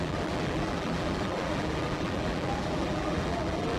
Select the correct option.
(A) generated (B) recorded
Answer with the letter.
A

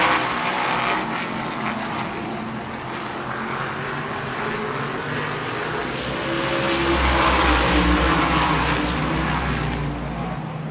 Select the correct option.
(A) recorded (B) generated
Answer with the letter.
A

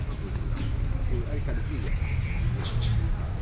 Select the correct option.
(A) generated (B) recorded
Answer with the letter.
B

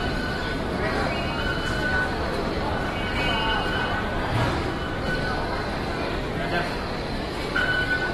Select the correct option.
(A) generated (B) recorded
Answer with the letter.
B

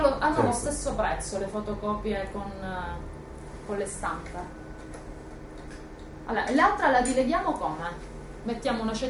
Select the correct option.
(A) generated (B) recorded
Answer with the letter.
B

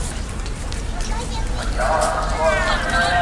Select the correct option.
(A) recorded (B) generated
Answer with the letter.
B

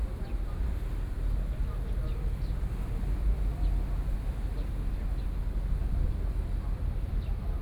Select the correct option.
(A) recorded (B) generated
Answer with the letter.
A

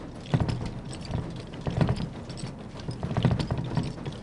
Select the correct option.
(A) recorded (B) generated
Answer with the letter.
A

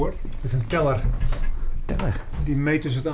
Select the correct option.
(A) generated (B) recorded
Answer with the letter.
B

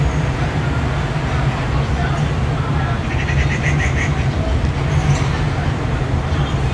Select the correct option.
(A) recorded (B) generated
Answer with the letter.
B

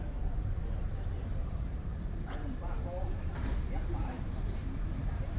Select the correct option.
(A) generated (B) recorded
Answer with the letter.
A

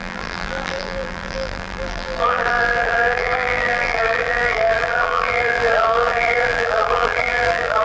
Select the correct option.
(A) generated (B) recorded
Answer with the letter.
A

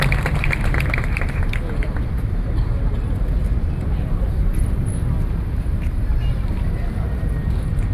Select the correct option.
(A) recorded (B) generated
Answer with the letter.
B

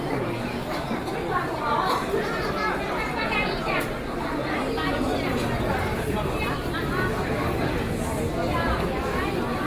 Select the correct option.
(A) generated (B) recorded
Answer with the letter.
B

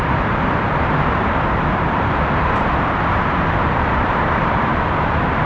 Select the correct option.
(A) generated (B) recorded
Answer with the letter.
A